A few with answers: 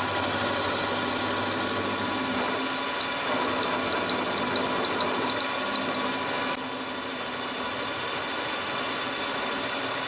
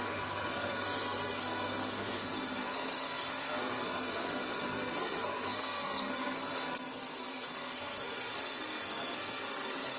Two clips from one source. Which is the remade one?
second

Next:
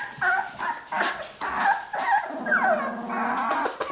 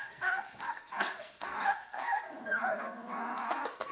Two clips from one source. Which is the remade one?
second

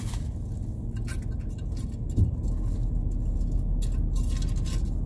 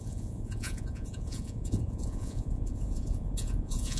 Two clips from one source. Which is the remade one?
second